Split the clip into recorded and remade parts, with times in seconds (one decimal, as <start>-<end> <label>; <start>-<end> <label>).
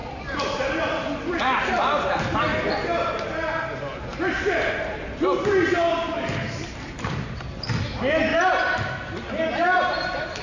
0.0-4.1 recorded; 4.1-7.7 remade; 7.7-10.4 recorded